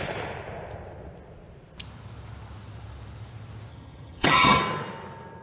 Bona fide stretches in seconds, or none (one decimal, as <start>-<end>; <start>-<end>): 0.0-3.7; 4.6-5.4